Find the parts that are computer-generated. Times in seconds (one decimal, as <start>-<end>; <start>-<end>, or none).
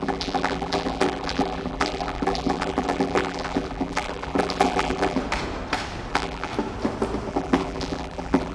0.0-5.2; 6.1-6.5; 7.3-8.5